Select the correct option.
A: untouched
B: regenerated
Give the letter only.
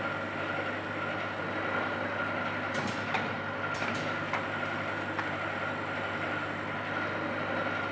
A